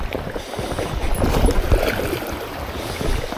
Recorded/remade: recorded